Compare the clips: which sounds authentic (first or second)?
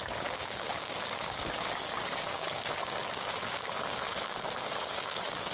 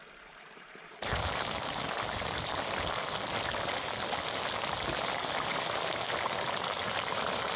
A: second